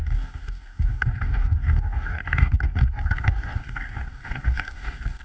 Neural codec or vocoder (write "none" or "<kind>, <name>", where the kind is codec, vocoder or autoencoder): codec, DAC